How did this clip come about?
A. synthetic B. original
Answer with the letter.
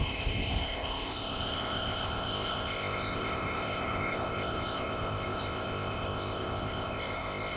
A